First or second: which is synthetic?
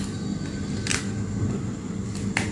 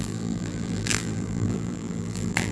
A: second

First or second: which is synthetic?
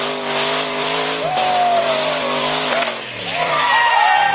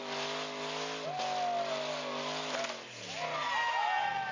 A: first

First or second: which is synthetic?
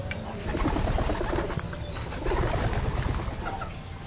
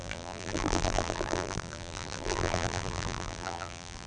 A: second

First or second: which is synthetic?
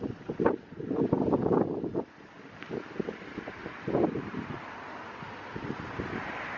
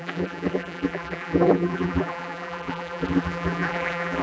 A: second